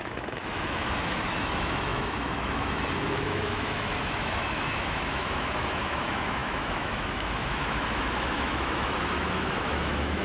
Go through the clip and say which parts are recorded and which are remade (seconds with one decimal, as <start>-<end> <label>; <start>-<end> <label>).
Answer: 0.0-10.2 remade